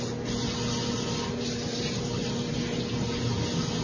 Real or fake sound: real